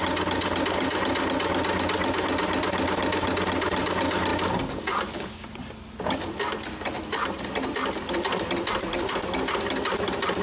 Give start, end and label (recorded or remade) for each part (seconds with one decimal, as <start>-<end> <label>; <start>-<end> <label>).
0.0-10.4 recorded